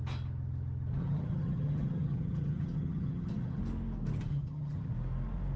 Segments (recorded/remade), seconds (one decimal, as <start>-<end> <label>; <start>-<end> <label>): 0.0-1.0 recorded; 1.0-3.6 remade; 3.6-4.3 recorded; 4.3-4.9 remade; 4.9-5.6 recorded